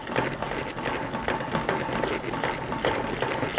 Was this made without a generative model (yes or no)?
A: yes